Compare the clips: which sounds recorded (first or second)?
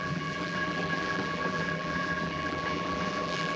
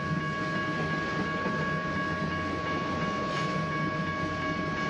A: second